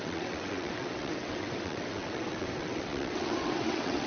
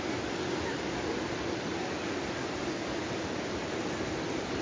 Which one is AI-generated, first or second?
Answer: first